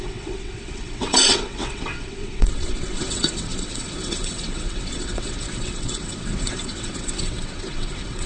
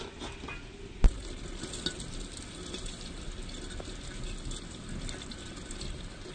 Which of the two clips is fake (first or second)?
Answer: first